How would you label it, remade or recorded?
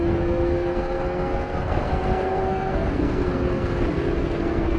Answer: remade